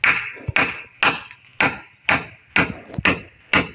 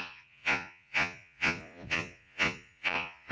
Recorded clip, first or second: first